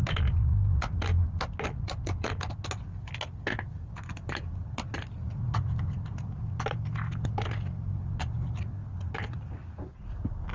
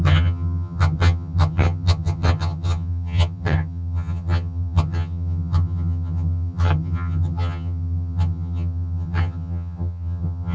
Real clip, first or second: first